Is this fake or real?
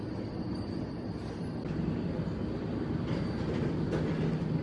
real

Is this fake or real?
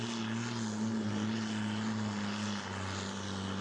real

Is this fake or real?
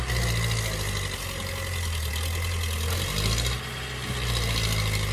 real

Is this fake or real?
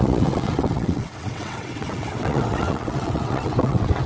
fake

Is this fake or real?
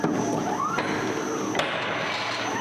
real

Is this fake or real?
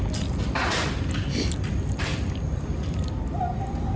real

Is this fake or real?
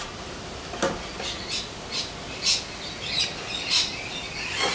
real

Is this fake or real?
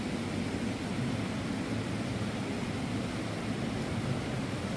real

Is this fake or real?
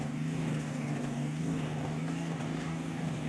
fake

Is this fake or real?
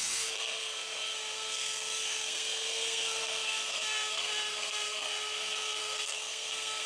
fake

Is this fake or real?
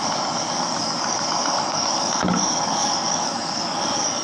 fake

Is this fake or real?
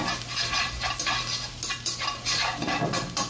real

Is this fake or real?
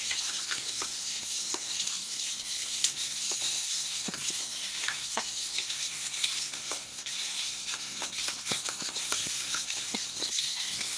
fake